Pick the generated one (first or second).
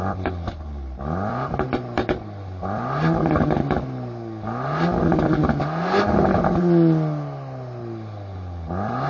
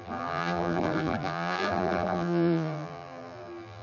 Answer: second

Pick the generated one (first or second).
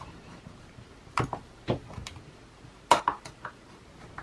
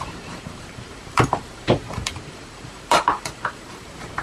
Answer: second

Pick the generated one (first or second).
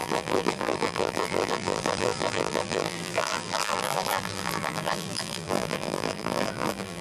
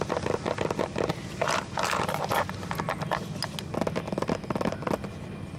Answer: first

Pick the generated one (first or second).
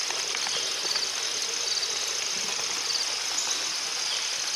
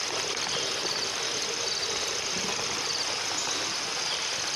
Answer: second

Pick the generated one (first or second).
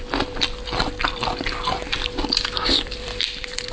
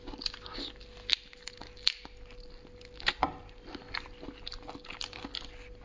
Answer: first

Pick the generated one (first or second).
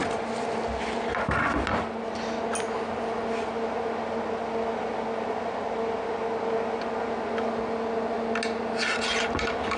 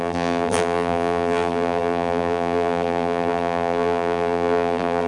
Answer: second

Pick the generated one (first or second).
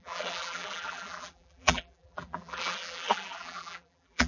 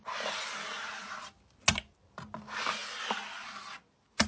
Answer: first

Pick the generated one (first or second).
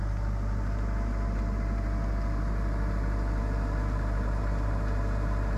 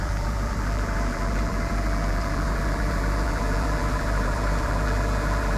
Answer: second